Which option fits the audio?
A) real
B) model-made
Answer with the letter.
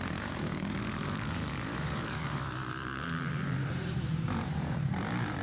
B